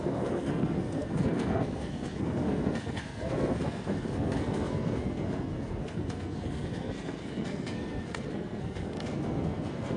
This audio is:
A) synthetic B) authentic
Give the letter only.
A